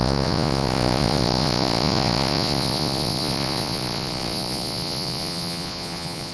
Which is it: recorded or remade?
remade